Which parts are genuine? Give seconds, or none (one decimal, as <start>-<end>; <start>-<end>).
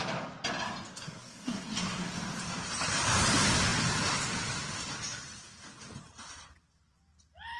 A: 0.0-0.9; 2.1-7.6